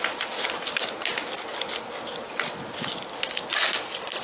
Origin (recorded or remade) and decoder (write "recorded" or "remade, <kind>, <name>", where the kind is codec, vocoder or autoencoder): recorded